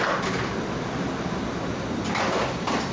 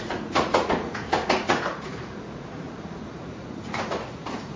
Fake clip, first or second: second